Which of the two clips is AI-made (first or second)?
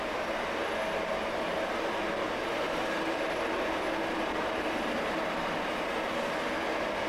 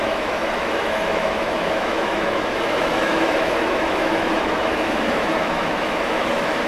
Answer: second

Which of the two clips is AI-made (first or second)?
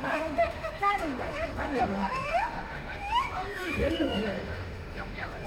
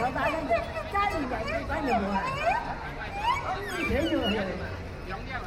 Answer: first